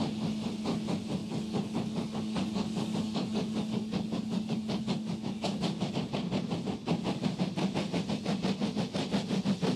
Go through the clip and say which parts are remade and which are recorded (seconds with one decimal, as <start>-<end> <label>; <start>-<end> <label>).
0.0-1.2 recorded; 1.2-5.9 remade; 5.9-9.8 recorded